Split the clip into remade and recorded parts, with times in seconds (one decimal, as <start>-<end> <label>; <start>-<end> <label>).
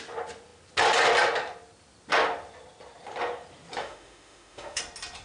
0.0-3.8 recorded; 3.8-4.8 remade; 4.8-5.2 recorded